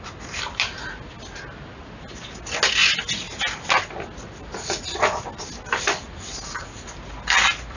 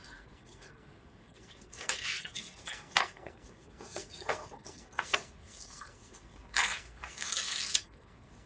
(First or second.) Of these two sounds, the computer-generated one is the second